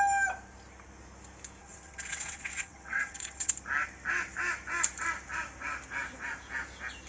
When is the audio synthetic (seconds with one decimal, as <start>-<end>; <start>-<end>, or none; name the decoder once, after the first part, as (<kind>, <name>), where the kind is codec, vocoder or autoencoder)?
1.6-3.5 (vocoder, WaveNeXt)